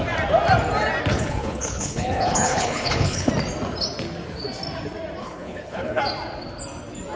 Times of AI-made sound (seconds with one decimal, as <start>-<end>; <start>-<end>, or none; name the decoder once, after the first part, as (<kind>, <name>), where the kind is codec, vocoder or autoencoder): 1.1-3.3 (codec, HILCodec); 5.2-6.0